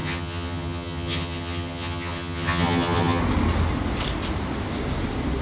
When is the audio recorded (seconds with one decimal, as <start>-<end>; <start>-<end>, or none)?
3.2-5.4